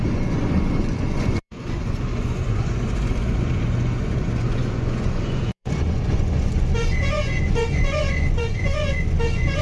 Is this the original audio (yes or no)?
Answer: no